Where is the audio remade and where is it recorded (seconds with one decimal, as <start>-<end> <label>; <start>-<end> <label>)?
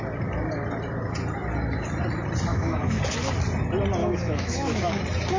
0.0-2.5 recorded; 2.5-3.0 remade; 3.0-4.0 recorded; 4.0-5.0 remade; 5.0-5.4 recorded